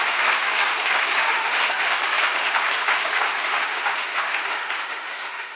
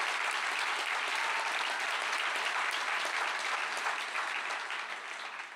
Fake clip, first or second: first